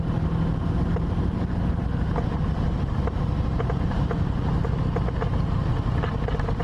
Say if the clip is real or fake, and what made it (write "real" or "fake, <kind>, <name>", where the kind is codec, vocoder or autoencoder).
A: real